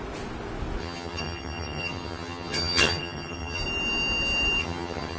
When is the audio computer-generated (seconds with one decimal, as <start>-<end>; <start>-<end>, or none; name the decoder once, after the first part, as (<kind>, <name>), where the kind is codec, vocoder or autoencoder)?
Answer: 0.8-3.6 (vocoder, HiFi-GAN); 4.6-5.2